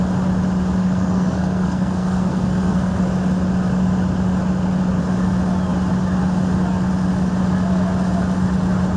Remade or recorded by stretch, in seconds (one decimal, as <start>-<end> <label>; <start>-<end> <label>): 0.0-0.8 recorded; 0.8-3.0 remade; 3.0-9.0 recorded